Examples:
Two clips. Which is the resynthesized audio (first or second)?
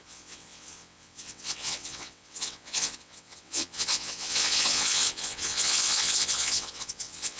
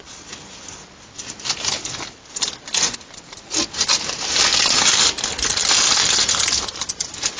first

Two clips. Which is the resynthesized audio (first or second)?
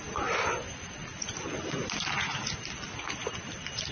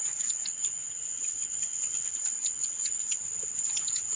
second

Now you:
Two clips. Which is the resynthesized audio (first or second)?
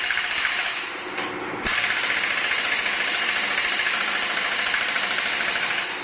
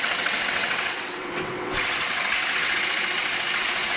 second